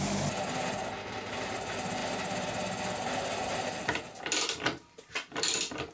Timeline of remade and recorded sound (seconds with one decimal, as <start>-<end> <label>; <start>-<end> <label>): 0.0-5.9 recorded